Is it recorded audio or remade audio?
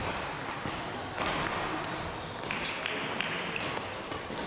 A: recorded